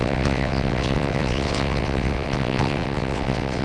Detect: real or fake fake